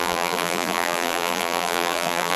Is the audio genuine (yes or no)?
no